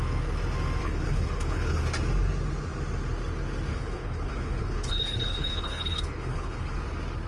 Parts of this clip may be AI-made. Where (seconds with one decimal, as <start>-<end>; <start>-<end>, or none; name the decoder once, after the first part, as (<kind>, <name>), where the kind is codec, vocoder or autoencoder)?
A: 0.8-1.8 (codec, HILCodec); 3.7-6.8